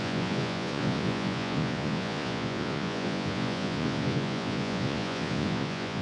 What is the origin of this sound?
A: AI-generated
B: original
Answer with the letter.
A